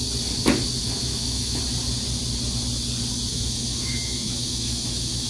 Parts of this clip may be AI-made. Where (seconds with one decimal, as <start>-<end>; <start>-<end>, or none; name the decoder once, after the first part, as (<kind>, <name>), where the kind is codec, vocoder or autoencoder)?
0.8-1.6 (autoencoder, DAC-VAE); 3.3-5.3